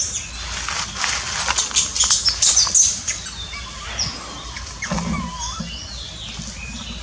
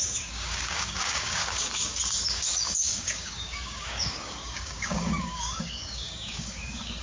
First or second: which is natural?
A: first